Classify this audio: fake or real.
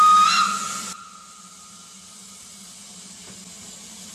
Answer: real